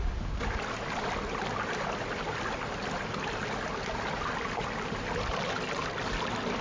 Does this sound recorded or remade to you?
recorded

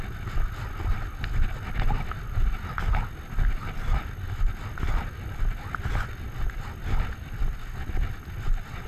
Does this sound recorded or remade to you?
recorded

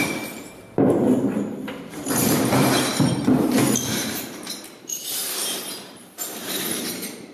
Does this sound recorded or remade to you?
remade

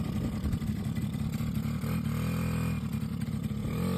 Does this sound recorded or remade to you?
remade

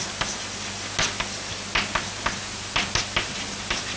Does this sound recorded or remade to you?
recorded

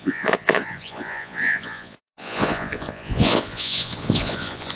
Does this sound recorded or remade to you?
remade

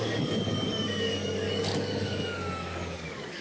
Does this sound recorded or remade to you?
remade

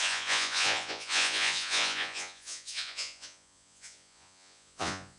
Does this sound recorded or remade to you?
remade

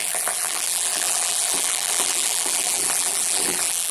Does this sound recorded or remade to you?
remade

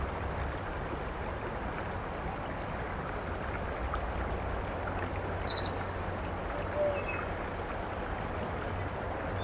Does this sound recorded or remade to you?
recorded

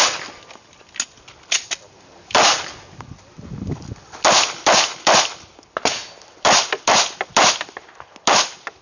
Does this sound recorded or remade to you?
recorded